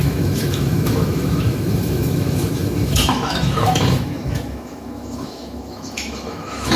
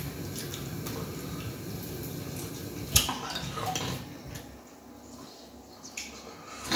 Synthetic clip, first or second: first